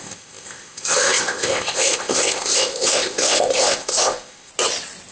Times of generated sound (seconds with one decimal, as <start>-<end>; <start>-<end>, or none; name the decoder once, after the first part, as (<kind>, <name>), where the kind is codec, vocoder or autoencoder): 0.0-4.5 (codec, ZipCodec)